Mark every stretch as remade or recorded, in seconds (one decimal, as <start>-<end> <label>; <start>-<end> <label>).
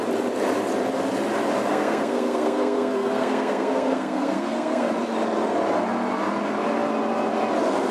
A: 0.0-1.7 recorded; 1.7-4.9 remade; 4.9-7.9 recorded